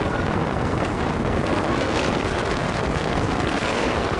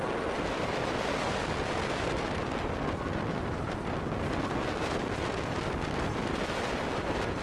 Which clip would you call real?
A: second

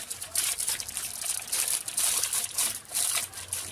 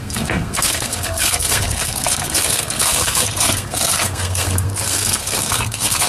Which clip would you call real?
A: first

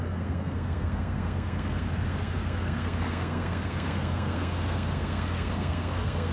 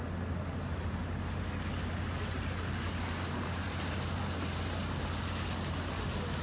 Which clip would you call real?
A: second